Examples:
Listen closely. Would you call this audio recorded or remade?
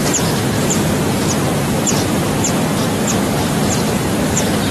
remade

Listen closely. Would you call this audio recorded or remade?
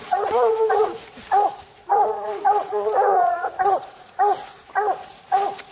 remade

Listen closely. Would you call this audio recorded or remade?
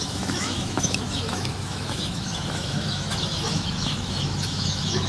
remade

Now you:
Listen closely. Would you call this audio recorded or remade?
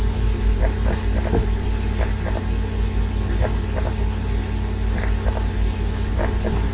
recorded